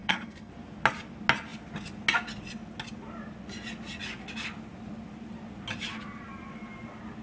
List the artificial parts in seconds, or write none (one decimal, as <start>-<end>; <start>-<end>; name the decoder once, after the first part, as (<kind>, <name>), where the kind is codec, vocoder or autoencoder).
0.0-0.5 (codec, SNAC)